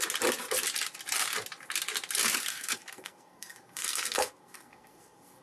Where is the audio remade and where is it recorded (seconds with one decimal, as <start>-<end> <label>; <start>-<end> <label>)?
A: 0.0-2.5 recorded; 2.5-5.4 remade